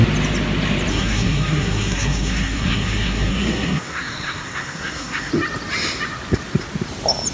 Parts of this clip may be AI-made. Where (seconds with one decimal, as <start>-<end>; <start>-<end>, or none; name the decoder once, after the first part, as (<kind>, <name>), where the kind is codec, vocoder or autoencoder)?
0.9-5.3 (codec, SNAC)